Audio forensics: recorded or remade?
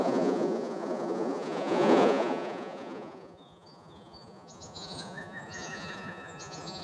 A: remade